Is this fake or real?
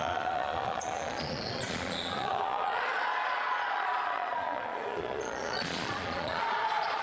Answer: fake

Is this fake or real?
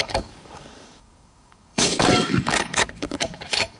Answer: fake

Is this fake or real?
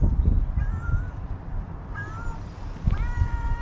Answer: real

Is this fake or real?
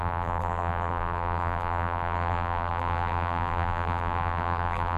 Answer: fake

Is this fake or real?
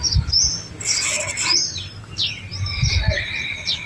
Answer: real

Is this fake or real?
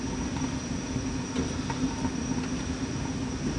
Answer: real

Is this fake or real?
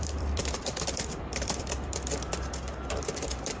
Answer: fake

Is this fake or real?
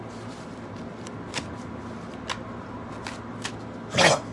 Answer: real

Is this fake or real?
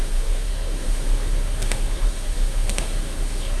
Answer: fake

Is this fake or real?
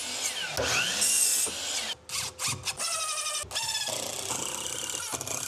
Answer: real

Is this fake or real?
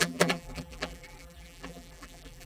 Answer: fake